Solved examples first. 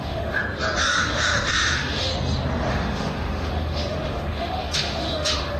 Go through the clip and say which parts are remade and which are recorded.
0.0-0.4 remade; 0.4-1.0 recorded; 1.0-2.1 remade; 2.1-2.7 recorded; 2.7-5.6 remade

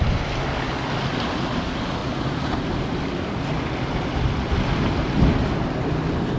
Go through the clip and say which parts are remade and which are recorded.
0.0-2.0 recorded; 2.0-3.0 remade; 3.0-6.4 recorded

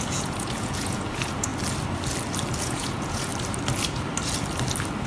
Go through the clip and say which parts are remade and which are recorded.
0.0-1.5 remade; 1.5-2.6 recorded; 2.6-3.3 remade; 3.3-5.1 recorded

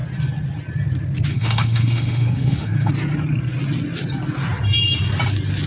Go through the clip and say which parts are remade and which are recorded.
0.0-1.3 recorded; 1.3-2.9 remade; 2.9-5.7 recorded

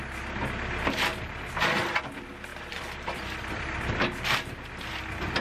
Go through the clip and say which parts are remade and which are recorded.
0.0-1.1 recorded; 1.1-2.0 remade; 2.0-2.5 recorded; 2.5-4.1 remade; 4.1-5.4 recorded